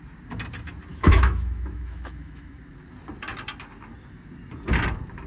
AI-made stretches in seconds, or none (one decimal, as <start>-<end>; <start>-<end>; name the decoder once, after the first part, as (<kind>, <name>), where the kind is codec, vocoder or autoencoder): 0.9-2.6 (autoencoder, DAC-VAE)